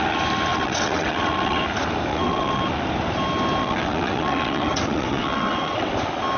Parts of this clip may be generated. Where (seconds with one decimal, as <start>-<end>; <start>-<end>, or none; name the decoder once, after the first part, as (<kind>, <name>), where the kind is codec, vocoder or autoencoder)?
0.5-1.6 (vocoder, WaveNeXt); 2.1-2.6; 3.6-5.9